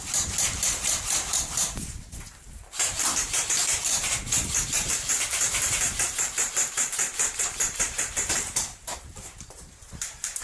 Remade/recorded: remade